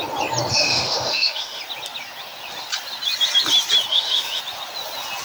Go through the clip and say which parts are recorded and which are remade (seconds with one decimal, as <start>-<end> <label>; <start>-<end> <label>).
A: 0.0-0.5 recorded; 0.5-1.6 remade; 1.6-3.9 recorded; 3.9-4.4 remade; 4.4-5.2 recorded